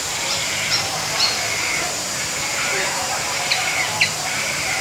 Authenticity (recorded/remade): remade